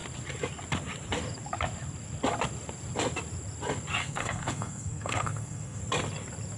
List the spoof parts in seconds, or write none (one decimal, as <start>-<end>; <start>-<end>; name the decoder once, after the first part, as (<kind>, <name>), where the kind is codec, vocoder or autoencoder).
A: 4.0-5.8 (codec, SNAC)